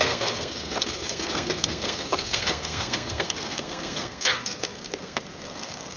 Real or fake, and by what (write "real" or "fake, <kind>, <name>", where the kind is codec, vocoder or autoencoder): fake, codec, SNAC